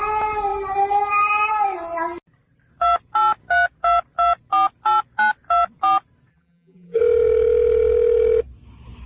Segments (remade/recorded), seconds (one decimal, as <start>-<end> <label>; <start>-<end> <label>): 0.0-6.3 recorded; 6.3-7.0 remade; 7.0-9.1 recorded